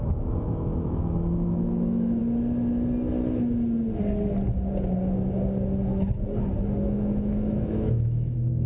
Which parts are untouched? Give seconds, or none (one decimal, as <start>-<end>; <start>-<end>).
2.2-6.8